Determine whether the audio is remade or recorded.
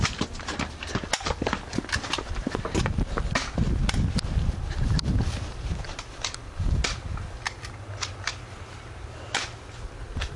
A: recorded